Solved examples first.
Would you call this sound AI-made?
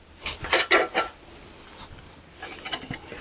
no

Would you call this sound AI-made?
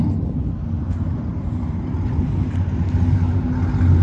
no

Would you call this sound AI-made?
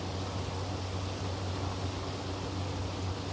no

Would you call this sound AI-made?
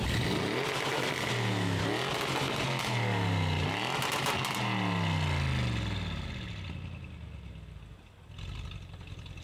no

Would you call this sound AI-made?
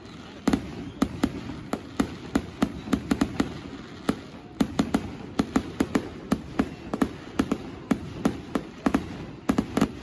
no